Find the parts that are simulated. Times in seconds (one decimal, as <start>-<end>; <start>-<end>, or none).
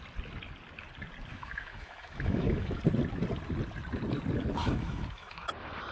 1.3-2.8; 4.6-5.5